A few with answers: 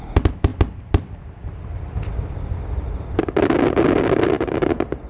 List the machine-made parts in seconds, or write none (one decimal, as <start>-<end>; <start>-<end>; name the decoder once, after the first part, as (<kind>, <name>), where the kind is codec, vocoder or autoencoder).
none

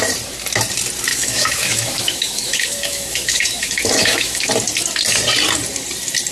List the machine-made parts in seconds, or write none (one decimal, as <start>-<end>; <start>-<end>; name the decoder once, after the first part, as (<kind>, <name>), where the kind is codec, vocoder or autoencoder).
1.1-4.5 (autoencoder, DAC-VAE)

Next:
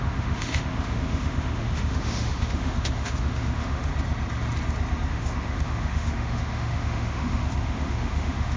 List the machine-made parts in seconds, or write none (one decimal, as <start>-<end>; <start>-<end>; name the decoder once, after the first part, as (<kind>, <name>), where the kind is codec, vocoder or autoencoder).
0.0-3.9 (autoencoder, DAC-VAE); 5.1-8.6